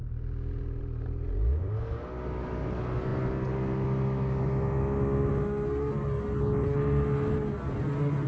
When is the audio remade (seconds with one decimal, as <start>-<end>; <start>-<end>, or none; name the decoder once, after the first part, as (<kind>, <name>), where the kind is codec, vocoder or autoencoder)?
none